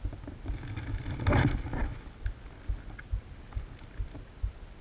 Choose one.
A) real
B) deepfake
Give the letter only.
A